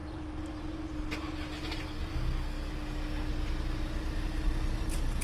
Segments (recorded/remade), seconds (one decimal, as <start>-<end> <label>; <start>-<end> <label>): 0.0-2.1 recorded; 2.1-2.7 remade; 2.7-5.2 recorded

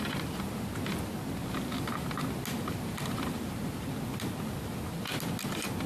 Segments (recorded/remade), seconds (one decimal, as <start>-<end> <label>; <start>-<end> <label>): 0.0-5.9 recorded

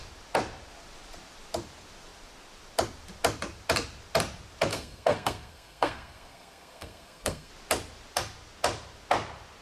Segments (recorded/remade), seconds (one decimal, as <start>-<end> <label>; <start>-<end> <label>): 0.0-4.7 recorded; 4.7-7.5 remade; 7.5-9.6 recorded